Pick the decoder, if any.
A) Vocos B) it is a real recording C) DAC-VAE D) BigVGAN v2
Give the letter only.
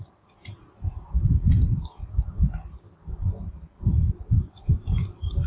B